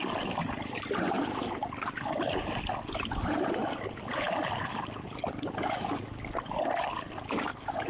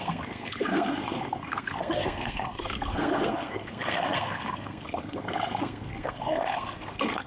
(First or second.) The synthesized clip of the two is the second